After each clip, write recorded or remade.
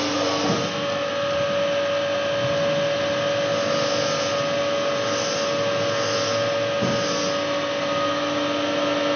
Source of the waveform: recorded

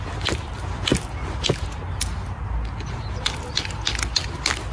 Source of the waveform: recorded